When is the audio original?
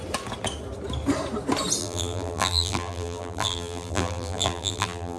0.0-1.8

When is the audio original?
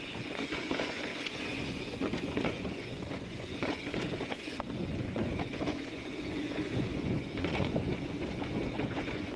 none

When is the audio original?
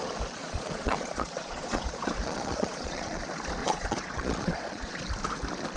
0.0-0.4; 3.2-3.6; 5.0-5.8